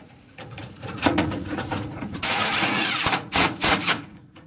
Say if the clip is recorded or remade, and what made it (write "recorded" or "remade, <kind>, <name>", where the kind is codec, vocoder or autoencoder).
remade, vocoder, Vocos